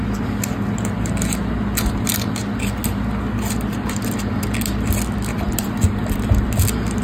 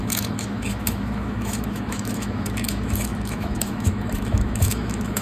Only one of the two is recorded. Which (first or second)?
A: first